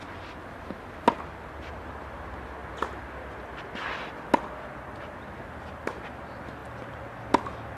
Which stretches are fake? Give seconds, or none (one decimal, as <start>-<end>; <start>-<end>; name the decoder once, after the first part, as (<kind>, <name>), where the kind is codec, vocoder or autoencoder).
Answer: none